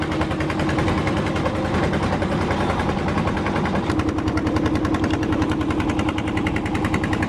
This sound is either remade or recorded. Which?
recorded